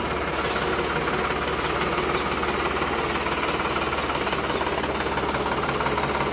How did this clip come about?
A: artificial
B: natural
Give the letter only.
B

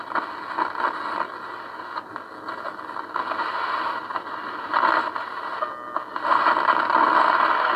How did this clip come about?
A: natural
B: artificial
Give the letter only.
A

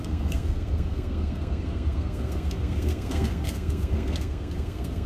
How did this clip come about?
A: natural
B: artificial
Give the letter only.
B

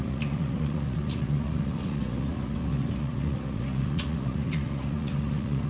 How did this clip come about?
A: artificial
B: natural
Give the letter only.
A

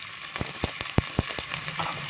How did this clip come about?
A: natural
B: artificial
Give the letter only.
A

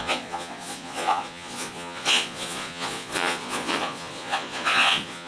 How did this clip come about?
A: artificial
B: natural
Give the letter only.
A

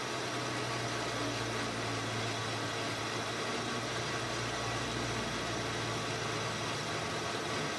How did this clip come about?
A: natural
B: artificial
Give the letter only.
A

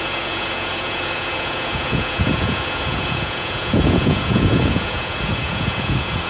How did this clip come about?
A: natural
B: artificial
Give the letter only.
B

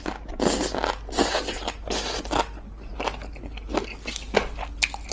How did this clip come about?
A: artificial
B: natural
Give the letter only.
B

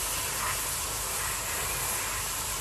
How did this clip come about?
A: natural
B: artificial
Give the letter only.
A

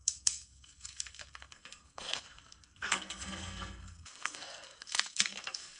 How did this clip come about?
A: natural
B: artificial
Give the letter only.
B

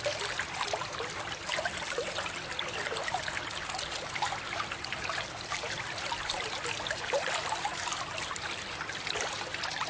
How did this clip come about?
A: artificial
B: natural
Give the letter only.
B